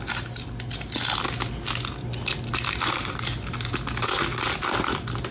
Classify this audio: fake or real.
real